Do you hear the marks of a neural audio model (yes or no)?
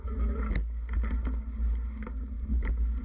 no